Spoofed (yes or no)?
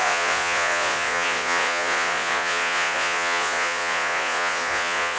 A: yes